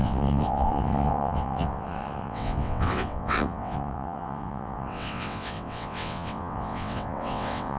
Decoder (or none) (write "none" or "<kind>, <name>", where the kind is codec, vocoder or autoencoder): vocoder, WaveNeXt